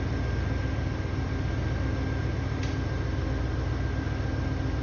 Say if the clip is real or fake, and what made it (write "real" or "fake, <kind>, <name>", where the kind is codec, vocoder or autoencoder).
real